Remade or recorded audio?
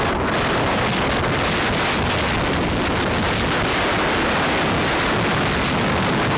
recorded